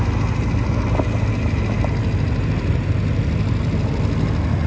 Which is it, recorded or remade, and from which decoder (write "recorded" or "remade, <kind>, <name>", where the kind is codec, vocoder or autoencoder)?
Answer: recorded